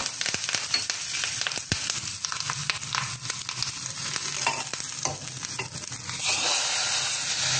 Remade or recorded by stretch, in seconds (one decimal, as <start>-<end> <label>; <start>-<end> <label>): 0.0-7.6 recorded